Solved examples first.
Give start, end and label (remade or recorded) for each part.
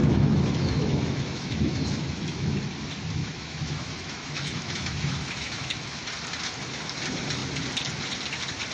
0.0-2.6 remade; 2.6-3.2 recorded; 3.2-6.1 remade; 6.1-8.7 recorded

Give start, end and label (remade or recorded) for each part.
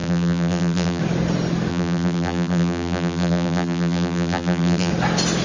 0.0-1.0 remade; 1.0-1.7 recorded; 1.7-4.9 remade; 4.9-5.4 recorded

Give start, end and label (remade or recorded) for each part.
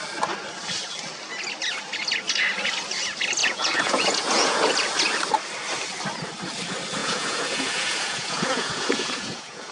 0.0-3.4 recorded; 3.4-4.7 remade; 4.7-7.0 recorded; 7.0-9.7 remade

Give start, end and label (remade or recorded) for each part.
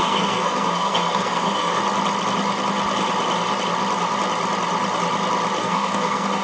0.0-1.8 remade; 1.8-5.6 recorded; 5.6-6.4 remade